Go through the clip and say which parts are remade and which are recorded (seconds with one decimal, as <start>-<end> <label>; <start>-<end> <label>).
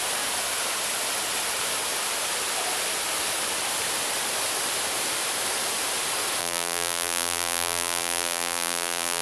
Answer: 0.0-6.4 recorded; 6.4-9.2 remade